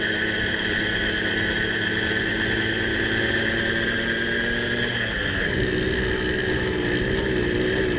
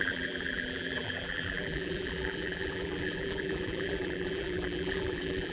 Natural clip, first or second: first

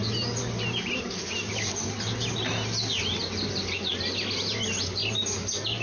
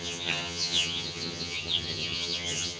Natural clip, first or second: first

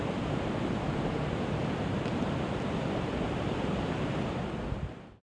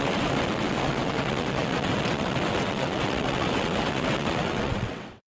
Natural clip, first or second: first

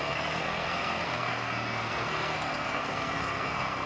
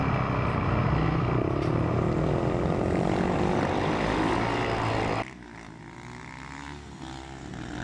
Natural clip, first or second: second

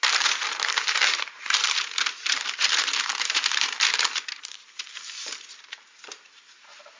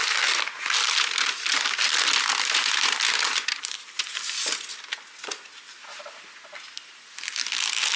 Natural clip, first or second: second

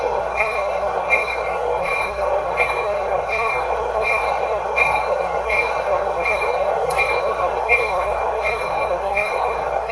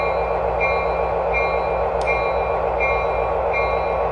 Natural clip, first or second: second